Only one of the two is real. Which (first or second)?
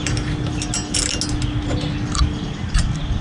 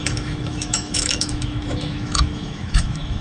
first